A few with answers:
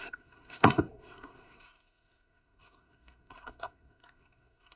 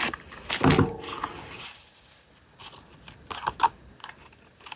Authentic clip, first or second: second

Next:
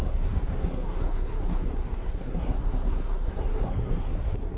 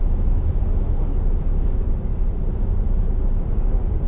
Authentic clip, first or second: second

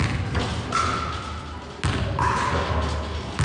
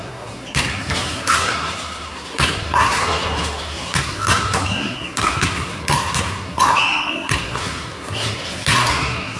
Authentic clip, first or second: first